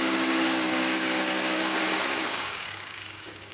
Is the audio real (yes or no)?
no